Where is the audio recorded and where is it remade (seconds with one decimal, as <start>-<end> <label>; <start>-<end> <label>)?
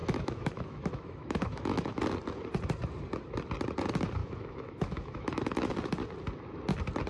0.0-2.0 remade; 2.0-4.2 recorded; 4.2-5.7 remade; 5.7-7.1 recorded